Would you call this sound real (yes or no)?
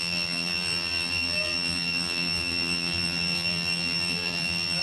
no